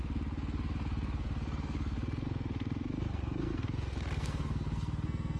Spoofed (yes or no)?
yes